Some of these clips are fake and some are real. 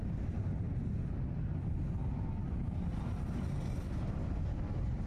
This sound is real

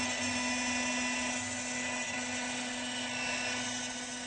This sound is real